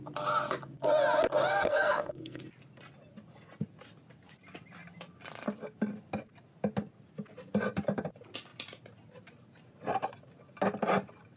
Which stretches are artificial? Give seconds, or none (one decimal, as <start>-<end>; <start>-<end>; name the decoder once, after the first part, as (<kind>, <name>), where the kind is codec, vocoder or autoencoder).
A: 1.5-2.4 (codec, SNAC)